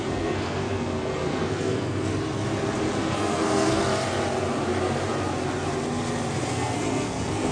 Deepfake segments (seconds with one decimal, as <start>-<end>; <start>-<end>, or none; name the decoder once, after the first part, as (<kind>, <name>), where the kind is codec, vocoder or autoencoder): 0.0-2.1 (codec, SNAC); 3.0-3.8; 6.5-7.5